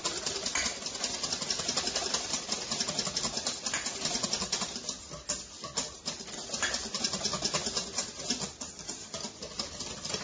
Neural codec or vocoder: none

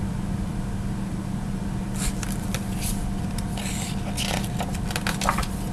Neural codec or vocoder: none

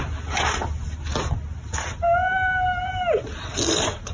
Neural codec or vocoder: none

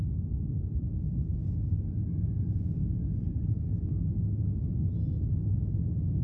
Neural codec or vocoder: none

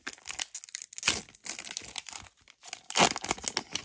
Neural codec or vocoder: none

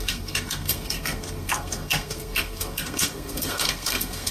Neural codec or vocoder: codec, SNAC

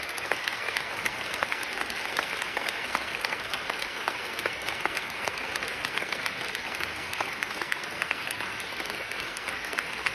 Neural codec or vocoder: codec, SNAC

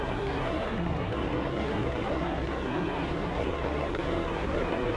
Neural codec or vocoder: codec, SNAC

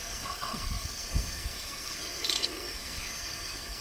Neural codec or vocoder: codec, SNAC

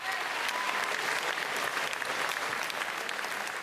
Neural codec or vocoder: none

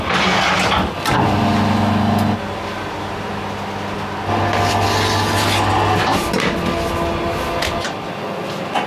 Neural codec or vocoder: none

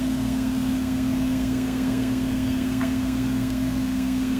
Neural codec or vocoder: codec, SNAC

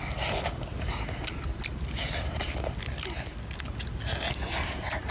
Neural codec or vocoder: none